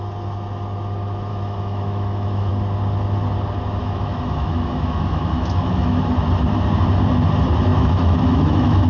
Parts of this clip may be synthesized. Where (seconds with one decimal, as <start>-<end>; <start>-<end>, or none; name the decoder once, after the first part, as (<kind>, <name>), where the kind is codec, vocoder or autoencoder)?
1.3-2.5 (autoencoder, DAC-VAE); 3.8-6.0; 7.7-8.9

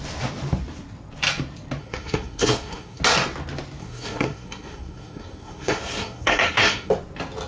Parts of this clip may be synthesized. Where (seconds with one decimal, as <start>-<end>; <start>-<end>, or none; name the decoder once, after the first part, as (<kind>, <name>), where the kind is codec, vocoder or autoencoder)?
1.8-3.0 (codec, SNAC); 3.8-6.9

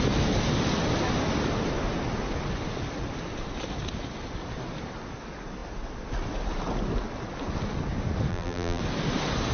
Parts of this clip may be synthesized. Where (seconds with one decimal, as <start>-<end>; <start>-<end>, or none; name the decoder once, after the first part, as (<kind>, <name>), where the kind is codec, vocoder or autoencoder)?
8.3-8.8 (vocoder, BigVGAN v2)